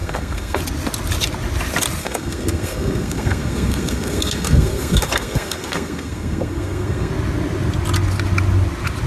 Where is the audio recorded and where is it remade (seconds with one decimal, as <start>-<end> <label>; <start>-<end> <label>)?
0.0-0.6 remade; 0.6-2.0 recorded; 2.0-7.1 remade; 7.1-9.1 recorded